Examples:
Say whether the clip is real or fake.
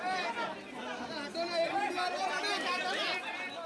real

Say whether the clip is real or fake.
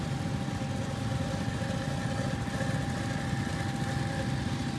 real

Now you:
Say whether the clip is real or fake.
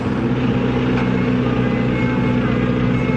real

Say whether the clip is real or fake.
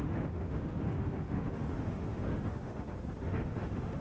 fake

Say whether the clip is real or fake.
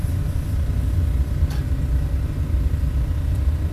fake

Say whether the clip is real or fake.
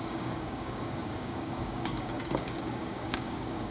fake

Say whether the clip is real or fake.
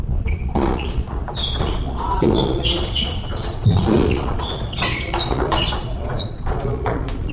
fake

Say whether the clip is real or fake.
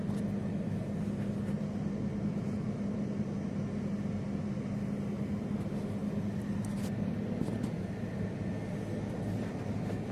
real